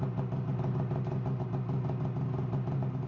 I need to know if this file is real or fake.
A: real